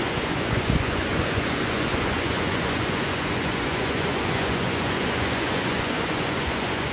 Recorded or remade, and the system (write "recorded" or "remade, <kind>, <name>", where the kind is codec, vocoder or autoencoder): remade, vocoder, Vocos